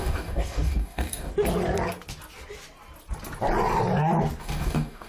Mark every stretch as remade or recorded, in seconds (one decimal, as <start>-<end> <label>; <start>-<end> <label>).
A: 0.0-1.3 remade; 1.3-4.4 recorded; 4.4-5.1 remade